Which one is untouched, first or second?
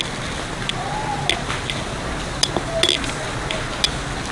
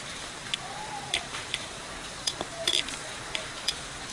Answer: first